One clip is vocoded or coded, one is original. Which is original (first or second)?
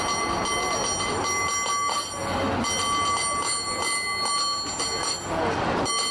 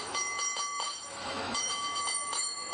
first